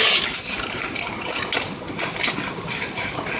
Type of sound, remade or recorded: recorded